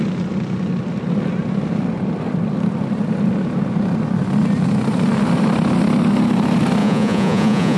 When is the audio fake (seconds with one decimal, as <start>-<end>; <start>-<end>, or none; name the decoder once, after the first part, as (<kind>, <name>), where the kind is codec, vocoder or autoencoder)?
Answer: 6.8-7.8 (vocoder, Vocos)